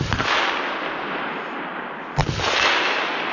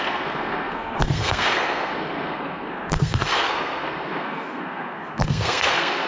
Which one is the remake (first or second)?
second